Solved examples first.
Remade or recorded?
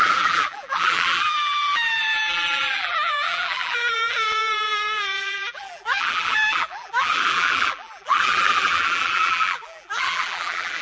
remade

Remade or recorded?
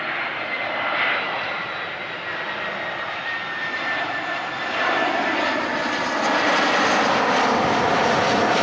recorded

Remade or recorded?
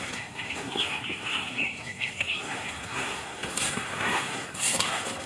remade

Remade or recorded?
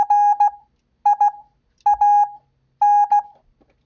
recorded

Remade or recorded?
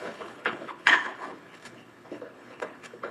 remade